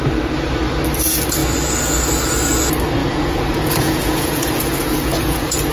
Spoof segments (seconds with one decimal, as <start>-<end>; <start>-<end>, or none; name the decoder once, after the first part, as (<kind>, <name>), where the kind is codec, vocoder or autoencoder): 3.0-5.7 (vocoder, Vocos)